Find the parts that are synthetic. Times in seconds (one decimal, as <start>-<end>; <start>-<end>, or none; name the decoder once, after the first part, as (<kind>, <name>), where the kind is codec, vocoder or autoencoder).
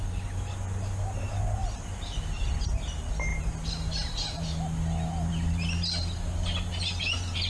none